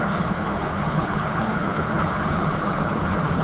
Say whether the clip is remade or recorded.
remade